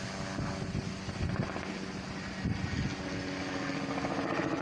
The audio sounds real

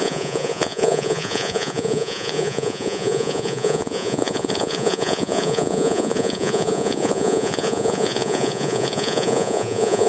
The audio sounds fake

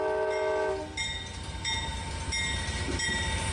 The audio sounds real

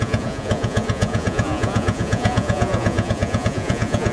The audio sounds fake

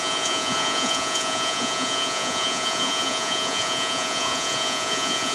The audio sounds fake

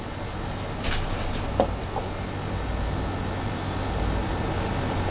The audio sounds real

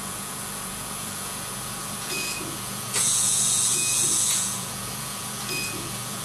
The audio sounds fake